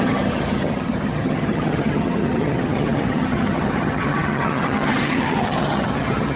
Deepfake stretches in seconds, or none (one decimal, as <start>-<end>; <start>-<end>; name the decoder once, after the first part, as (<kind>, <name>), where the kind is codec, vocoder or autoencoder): 0.0-6.4 (vocoder, HiFi-GAN)